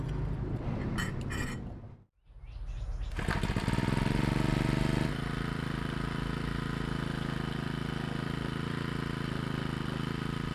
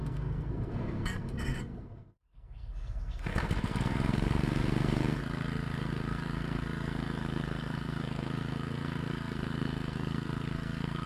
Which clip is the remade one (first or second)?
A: second